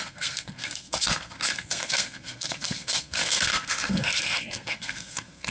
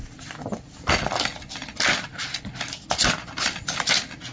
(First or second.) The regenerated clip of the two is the first